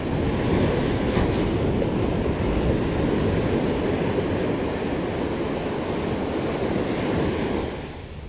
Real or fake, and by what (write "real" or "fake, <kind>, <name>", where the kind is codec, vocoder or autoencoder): real